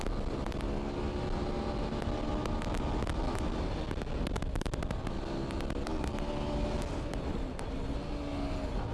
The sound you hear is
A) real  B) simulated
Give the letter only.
A